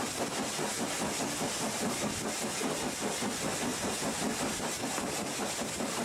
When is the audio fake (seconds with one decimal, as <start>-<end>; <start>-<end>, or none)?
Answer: 3.7-4.2